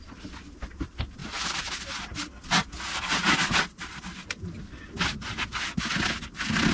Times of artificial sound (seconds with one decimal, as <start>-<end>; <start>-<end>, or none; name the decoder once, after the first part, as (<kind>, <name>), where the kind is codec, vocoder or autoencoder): none